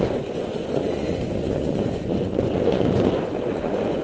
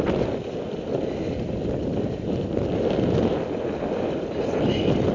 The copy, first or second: first